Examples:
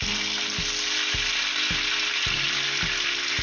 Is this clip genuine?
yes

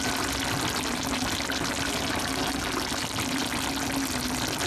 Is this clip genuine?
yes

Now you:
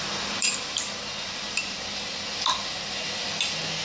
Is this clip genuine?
yes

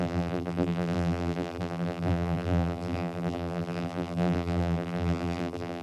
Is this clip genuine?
no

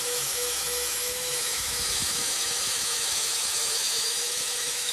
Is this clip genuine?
no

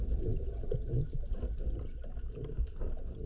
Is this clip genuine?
yes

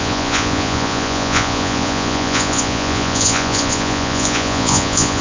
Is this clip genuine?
no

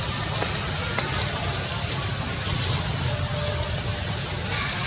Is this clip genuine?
yes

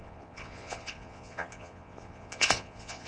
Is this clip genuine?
no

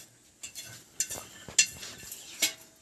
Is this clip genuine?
yes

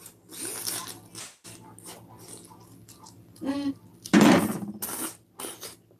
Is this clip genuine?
yes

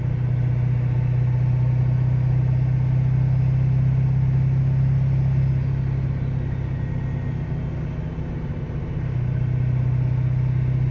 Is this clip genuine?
yes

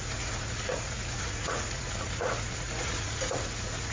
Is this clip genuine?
no